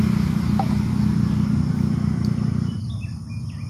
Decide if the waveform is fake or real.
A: real